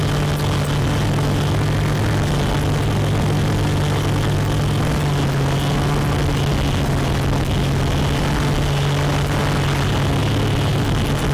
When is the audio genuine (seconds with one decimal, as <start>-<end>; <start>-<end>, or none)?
0.0-11.3